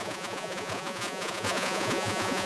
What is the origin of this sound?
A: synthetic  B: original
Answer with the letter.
A